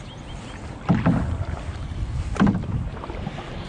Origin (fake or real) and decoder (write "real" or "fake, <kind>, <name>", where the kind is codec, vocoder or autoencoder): real